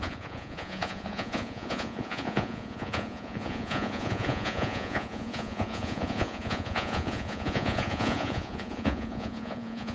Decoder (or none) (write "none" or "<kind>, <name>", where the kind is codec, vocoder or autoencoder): vocoder, Vocos